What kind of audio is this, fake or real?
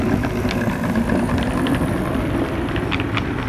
fake